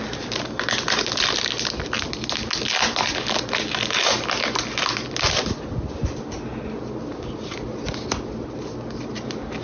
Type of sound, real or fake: real